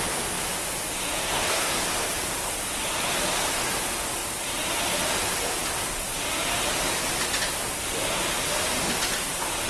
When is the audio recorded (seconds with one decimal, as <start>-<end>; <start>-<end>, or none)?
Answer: 0.0-1.2; 1.7-9.7